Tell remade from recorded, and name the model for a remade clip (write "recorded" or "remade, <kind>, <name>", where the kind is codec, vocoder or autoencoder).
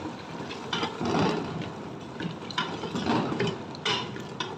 recorded